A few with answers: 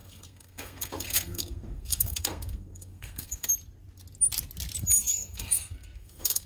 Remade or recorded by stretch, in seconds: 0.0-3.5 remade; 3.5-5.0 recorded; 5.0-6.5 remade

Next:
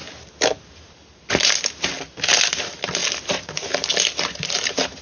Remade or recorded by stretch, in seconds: 0.0-5.0 recorded

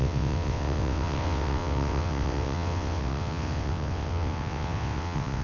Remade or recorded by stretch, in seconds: 0.0-5.4 remade

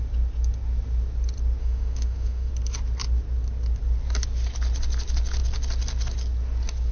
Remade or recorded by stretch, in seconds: 0.0-1.6 recorded; 1.6-2.5 remade; 2.5-6.9 recorded

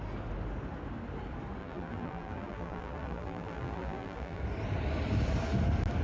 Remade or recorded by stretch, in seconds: 0.0-1.6 recorded; 1.6-4.4 remade; 4.4-6.0 recorded

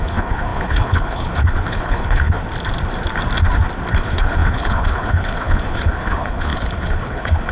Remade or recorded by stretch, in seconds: 0.0-2.4 remade; 2.4-3.9 recorded; 3.9-7.5 remade